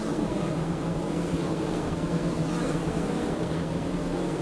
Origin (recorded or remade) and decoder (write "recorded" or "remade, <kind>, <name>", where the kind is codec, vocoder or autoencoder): remade, codec, SNAC